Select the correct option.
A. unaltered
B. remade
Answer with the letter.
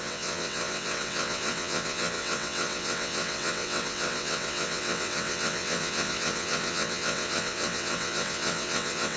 B